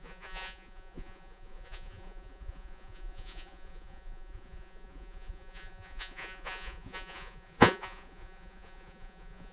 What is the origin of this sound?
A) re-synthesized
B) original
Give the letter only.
A